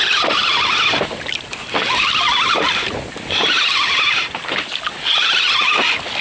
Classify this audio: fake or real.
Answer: real